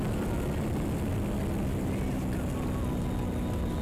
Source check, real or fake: real